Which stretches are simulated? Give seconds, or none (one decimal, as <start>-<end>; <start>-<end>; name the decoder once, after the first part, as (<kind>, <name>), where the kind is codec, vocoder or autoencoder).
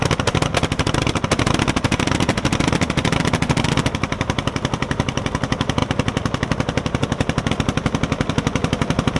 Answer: none